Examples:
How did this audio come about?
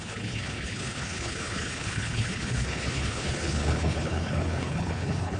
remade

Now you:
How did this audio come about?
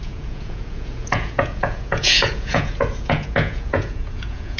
remade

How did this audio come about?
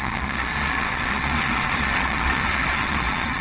remade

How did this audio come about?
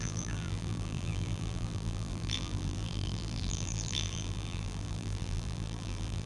remade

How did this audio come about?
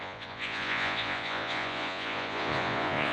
remade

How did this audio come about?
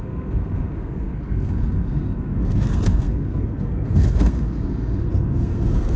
remade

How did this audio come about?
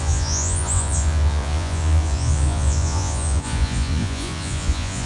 remade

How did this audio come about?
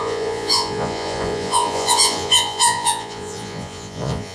remade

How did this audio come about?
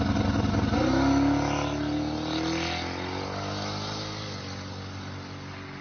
recorded